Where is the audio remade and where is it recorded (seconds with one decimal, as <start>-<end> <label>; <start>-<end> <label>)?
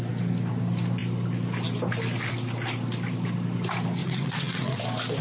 0.0-4.0 recorded; 4.0-4.8 remade; 4.8-5.2 recorded